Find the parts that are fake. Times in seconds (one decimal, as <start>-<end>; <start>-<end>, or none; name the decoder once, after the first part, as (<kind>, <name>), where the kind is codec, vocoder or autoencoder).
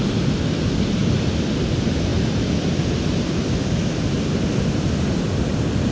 2.1-5.4 (vocoder, BigVGAN v2)